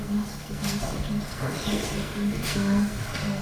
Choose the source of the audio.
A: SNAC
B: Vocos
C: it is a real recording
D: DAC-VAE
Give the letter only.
A